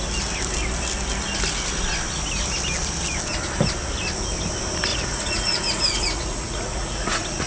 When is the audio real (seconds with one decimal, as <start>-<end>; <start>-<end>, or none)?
0.0-4.9